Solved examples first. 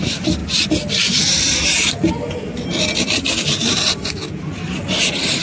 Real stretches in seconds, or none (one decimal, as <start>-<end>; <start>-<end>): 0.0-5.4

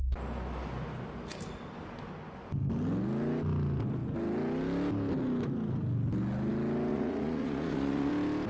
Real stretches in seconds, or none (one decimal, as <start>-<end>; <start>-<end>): 0.0-6.9; 8.1-8.5

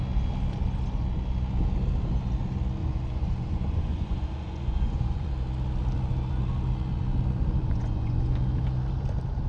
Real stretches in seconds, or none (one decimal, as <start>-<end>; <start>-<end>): 0.0-2.8; 5.3-7.6; 8.4-9.5